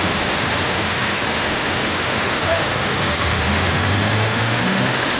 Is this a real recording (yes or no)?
no